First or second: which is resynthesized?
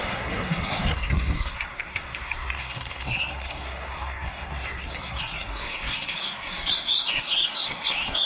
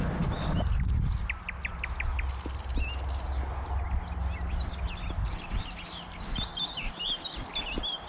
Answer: first